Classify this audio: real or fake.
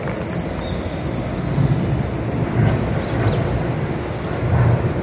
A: real